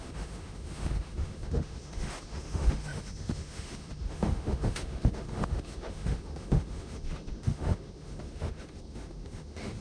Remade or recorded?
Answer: remade